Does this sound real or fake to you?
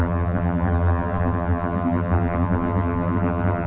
fake